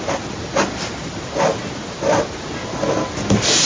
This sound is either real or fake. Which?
real